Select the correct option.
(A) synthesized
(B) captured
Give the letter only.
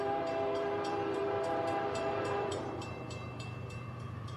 A